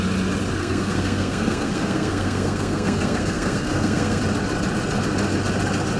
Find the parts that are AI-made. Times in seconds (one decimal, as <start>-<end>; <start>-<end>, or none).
0.6-4.2